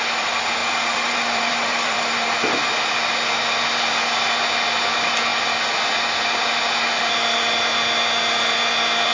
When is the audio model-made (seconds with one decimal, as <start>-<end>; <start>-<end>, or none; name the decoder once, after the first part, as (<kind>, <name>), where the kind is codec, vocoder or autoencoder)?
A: 0.6-2.3 (vocoder, BigVGAN v2)